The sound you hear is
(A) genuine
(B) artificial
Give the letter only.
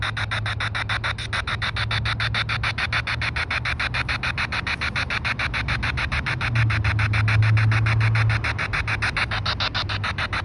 A